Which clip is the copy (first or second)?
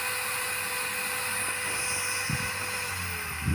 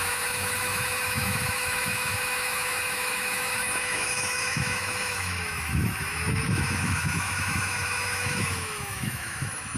second